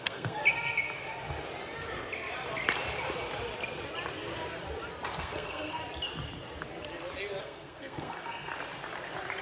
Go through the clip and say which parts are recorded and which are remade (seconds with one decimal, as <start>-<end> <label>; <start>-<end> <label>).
0.0-0.4 remade; 0.4-5.2 recorded; 5.2-5.8 remade; 5.8-7.4 recorded; 7.4-8.5 remade; 8.5-9.4 recorded